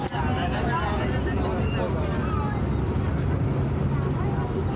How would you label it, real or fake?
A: real